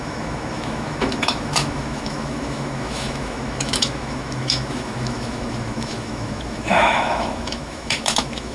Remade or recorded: remade